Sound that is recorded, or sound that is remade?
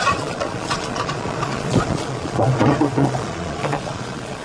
remade